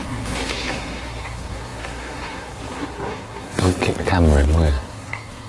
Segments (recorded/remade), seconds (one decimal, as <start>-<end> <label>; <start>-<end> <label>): 0.0-3.8 remade; 3.8-4.7 recorded; 4.7-5.5 remade